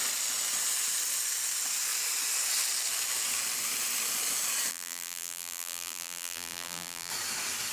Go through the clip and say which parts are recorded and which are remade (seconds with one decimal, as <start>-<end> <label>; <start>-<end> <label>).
0.0-4.7 recorded; 4.7-7.1 remade; 7.1-7.7 recorded